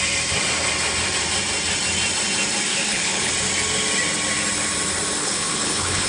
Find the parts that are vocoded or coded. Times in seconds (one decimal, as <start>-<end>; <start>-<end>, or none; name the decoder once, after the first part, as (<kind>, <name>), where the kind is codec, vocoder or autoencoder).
2.7-3.3 (codec, HILCodec); 5.2-6.1